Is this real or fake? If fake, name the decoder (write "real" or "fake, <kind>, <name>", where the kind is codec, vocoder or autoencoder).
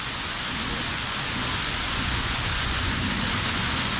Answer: fake, vocoder, Vocos